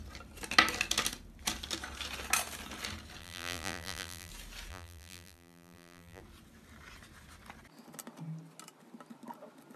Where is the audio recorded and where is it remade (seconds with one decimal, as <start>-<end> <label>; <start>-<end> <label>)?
0.0-3.2 recorded; 3.2-4.3 remade; 4.3-4.7 recorded; 4.7-6.2 remade; 6.2-9.8 recorded